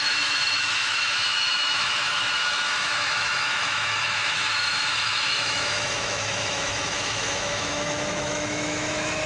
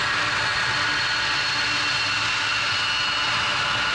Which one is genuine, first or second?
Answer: second